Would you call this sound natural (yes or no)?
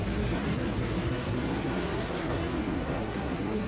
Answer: no